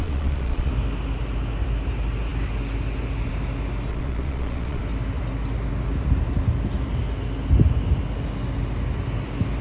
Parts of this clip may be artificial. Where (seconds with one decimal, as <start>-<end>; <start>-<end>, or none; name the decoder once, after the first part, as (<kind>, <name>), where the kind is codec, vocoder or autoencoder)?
0.0-0.7 (vocoder, Vocos); 3.9-4.8